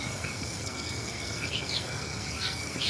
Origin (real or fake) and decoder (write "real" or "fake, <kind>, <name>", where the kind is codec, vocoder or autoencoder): fake, codec, SNAC